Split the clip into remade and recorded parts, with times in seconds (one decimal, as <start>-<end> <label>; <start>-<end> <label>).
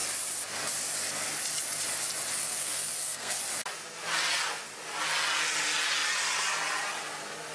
0.0-2.4 recorded; 2.4-3.4 remade; 3.4-7.5 recorded